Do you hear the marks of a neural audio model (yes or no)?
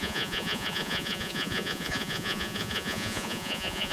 yes